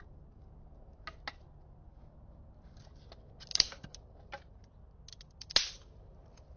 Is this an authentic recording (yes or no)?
yes